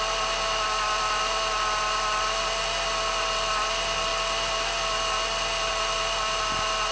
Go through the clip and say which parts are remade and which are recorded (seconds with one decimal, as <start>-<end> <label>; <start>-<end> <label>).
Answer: 0.0-6.9 recorded